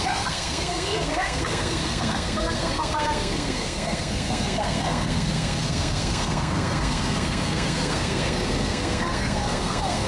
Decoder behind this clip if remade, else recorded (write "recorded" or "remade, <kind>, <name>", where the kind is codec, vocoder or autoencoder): remade, codec, SNAC